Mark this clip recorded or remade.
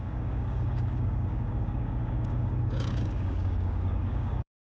remade